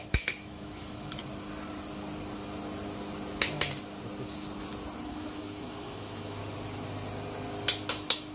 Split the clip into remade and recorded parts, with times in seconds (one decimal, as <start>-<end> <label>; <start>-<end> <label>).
0.0-1.2 remade; 1.2-5.1 recorded; 5.1-6.4 remade; 6.4-7.9 recorded; 7.9-8.3 remade